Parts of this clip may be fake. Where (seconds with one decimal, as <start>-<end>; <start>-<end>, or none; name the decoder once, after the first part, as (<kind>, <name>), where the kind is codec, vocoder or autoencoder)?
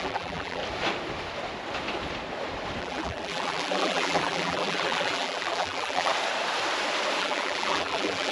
0.0-0.6 (vocoder, BigVGAN v2); 2.8-6.1; 7.2-8.3